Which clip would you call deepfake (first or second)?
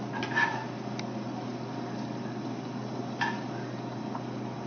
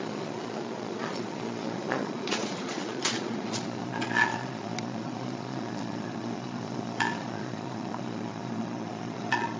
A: second